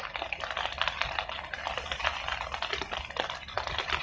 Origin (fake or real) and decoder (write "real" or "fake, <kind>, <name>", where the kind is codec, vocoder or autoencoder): real